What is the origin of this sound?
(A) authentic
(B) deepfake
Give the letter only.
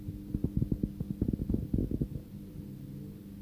A